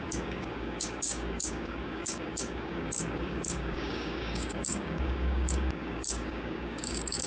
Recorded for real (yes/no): no